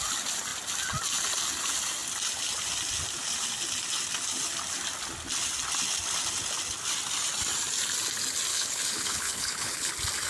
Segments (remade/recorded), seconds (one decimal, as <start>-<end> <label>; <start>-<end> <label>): 0.0-8.5 recorded; 8.5-9.9 remade; 9.9-10.3 recorded